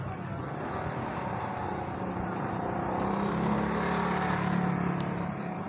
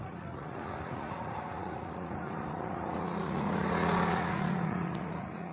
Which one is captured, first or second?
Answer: first